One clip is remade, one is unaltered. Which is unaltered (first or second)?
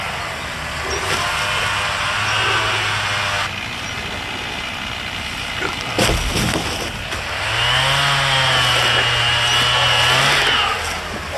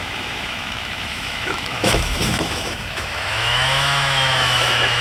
first